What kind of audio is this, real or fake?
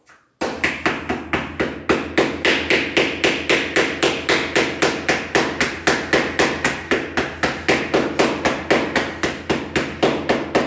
real